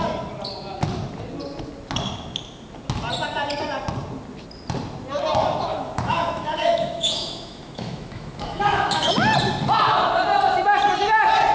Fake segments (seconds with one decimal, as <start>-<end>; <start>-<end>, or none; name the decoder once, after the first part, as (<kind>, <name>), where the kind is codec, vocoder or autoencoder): 5.7-9.1 (autoencoder, DAC-VAE)